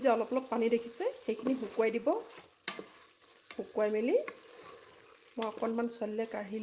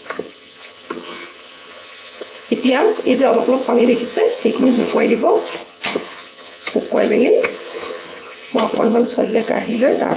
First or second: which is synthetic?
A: second